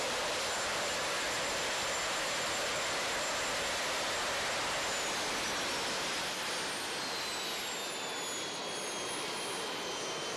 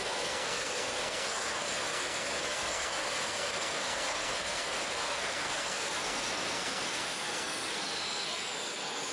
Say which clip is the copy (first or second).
second